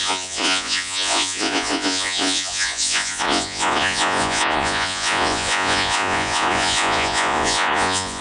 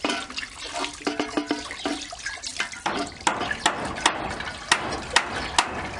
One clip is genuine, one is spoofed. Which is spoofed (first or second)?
first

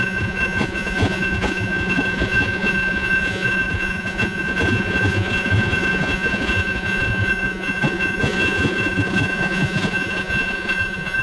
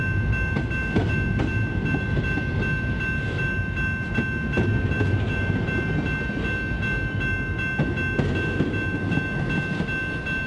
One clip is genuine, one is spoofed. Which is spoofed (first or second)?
first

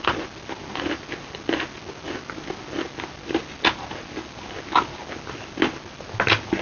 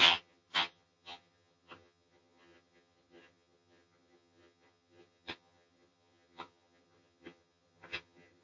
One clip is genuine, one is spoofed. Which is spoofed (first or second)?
second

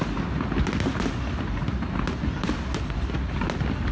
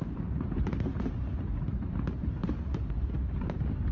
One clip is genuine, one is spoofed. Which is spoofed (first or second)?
second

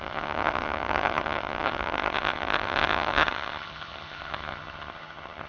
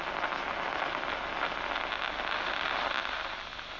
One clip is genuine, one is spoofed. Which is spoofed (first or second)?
first